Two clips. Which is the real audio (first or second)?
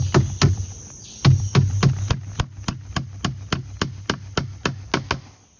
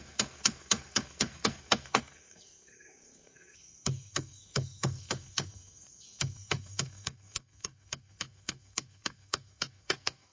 first